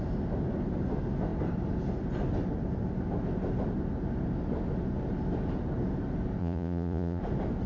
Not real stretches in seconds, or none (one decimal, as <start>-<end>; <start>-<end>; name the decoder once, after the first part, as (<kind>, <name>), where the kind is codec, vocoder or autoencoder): 6.4-7.2 (vocoder, Vocos)